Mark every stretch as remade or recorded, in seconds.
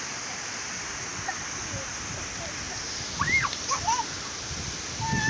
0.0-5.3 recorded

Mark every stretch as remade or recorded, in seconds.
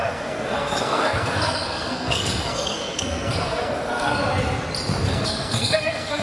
0.0-4.2 remade; 4.2-5.1 recorded; 5.1-6.2 remade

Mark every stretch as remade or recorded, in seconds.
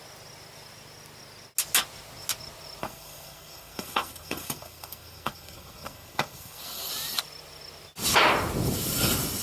0.0-2.8 recorded; 2.8-6.9 remade; 6.9-9.4 recorded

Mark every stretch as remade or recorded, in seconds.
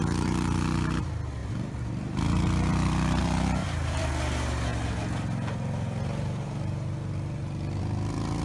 0.0-1.4 recorded; 1.4-2.7 remade; 2.7-3.2 recorded; 3.2-4.1 remade; 4.1-8.4 recorded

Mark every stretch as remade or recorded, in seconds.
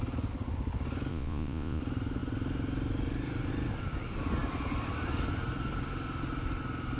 0.0-1.1 recorded; 1.1-1.8 remade; 1.8-7.0 recorded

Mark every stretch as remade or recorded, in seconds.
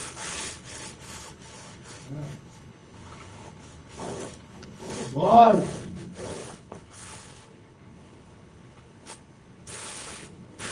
0.0-10.7 remade